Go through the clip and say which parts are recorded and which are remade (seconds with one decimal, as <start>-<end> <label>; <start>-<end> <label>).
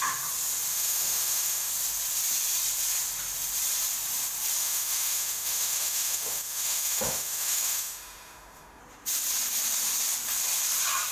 0.0-0.7 recorded; 0.7-1.7 remade; 1.7-4.6 recorded; 4.6-8.8 remade; 8.8-11.1 recorded